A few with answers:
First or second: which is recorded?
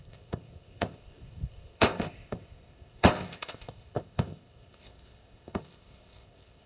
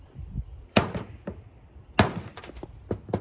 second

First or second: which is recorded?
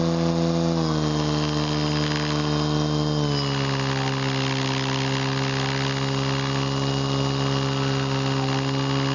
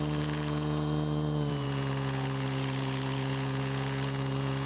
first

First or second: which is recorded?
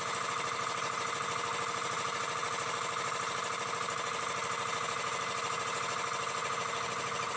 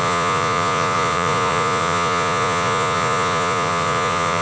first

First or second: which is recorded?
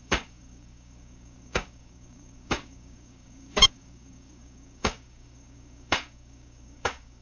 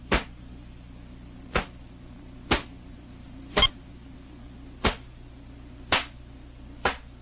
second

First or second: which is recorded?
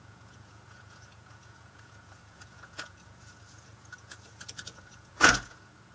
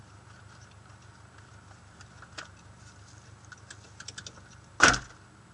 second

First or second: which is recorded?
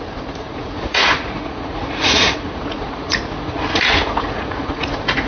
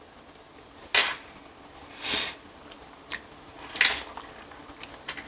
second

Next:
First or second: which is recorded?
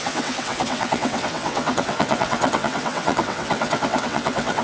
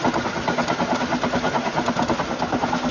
second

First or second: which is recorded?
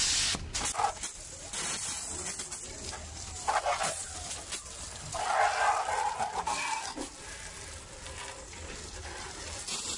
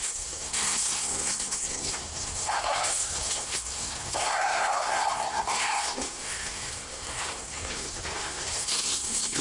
first